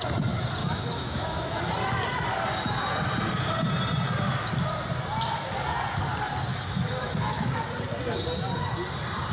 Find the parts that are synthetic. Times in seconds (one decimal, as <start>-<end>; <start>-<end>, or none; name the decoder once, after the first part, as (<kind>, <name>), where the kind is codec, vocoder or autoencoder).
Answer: 0.6-1.6 (autoencoder, DAC-VAE); 6.5-7.5